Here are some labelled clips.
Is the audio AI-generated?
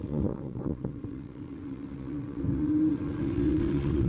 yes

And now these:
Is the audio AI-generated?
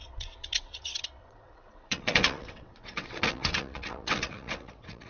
yes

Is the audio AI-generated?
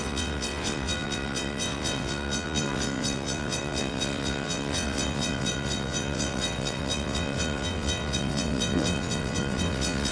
yes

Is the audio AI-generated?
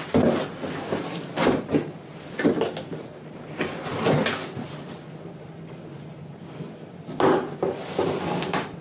no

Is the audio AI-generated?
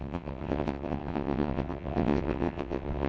yes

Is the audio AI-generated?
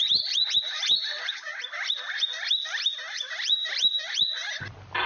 no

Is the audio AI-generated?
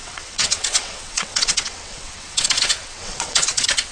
yes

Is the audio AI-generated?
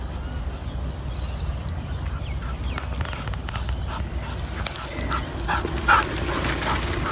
no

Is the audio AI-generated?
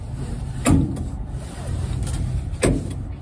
no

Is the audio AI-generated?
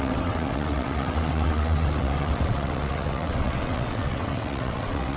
yes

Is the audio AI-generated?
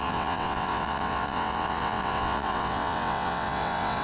yes